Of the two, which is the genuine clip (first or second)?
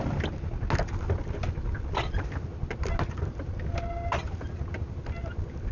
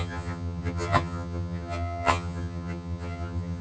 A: first